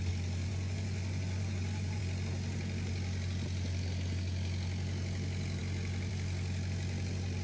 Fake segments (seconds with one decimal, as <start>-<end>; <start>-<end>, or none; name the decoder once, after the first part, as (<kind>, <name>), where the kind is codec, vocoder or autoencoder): 0.5-2.0 (vocoder, Vocos)